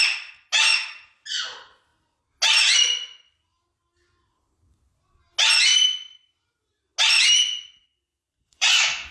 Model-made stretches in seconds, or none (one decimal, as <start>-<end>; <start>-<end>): 8.1-9.1